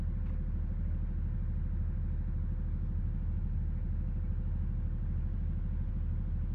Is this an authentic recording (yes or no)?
yes